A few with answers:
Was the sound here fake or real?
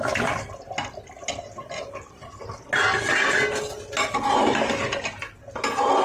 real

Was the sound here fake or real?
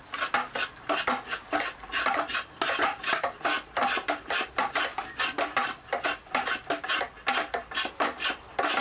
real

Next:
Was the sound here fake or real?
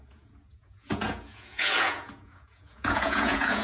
fake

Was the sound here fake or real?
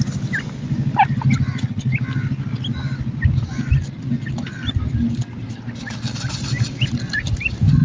real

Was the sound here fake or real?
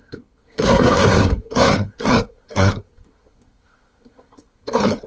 fake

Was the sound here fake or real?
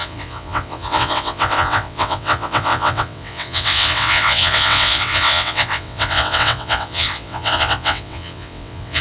fake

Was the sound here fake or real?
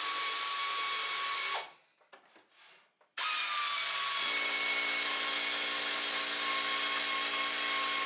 real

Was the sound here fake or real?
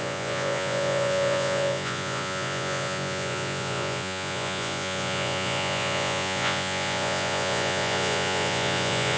fake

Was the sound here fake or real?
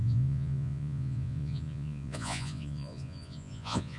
fake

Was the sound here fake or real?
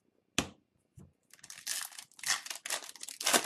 real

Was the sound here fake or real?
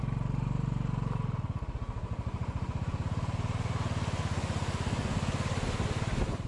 real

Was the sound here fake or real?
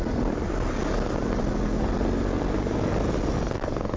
real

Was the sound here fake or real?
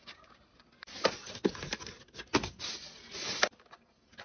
real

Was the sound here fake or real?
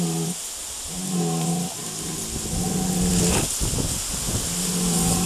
real